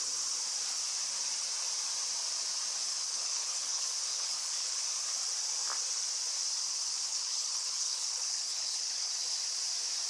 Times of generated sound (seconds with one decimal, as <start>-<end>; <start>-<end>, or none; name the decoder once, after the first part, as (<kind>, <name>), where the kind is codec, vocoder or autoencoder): 2.9-4.8 (codec, HILCodec); 7.1-9.1